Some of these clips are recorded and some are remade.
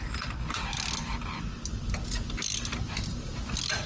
recorded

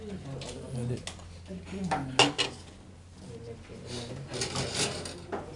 recorded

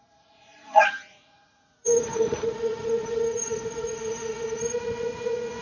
remade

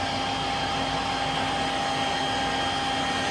recorded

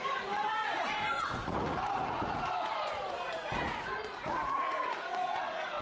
remade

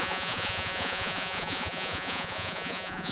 remade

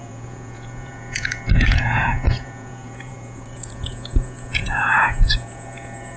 remade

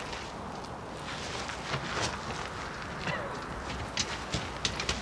recorded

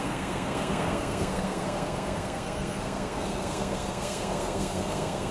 remade